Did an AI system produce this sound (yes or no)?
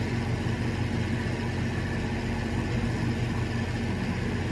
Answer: no